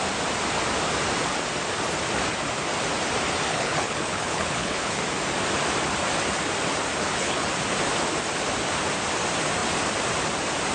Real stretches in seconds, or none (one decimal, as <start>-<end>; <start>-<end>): 0.0-3.5; 5.0-7.0; 7.5-10.7